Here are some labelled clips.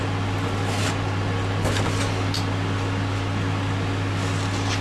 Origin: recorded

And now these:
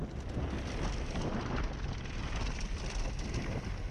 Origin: recorded